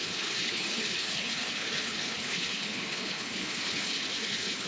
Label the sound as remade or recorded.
remade